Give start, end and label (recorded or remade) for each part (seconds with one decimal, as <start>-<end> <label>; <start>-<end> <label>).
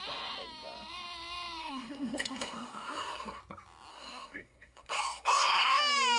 0.0-1.6 recorded; 1.6-3.4 remade; 3.4-3.9 recorded; 3.9-5.8 remade; 5.8-6.2 recorded